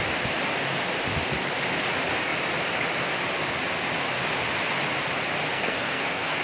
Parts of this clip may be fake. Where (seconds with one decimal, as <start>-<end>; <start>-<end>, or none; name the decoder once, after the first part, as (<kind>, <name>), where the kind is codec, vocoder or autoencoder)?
5.5-6.4 (codec, SNAC)